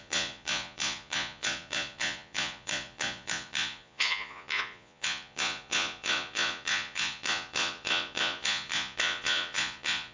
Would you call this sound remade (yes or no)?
yes